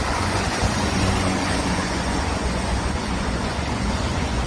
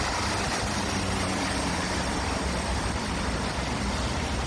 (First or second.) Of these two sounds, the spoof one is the first